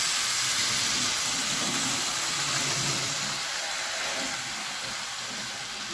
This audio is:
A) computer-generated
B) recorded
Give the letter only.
B